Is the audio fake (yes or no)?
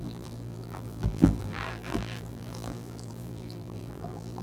yes